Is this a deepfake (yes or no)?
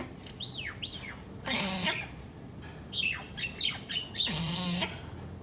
no